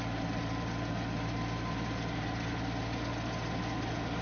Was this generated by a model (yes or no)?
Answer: no